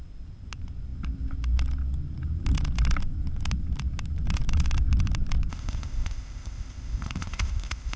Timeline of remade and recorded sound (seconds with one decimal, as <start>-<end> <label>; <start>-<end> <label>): 0.0-5.5 recorded; 5.5-8.0 remade